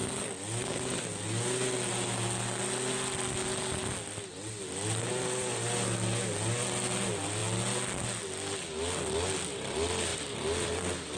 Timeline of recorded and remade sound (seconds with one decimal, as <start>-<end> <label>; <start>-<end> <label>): 0.0-11.2 recorded